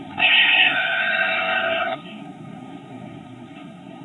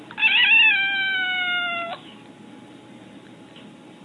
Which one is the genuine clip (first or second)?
second